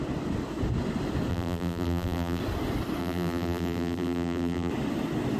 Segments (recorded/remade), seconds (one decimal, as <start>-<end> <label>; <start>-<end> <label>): 0.0-1.3 recorded; 1.3-2.4 remade; 2.4-3.0 recorded; 3.0-4.7 remade; 4.7-5.4 recorded